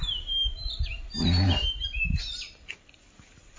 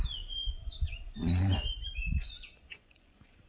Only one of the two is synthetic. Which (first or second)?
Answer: second